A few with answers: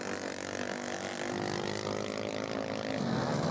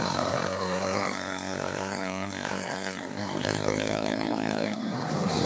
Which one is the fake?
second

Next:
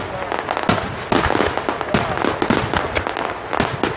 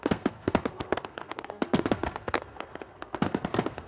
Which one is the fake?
second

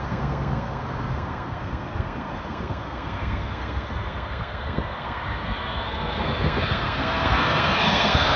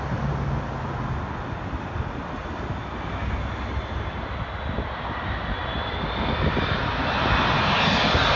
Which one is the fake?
first